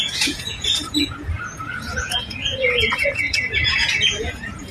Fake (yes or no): yes